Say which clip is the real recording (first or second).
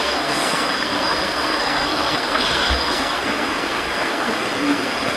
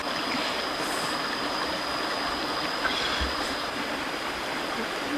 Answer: second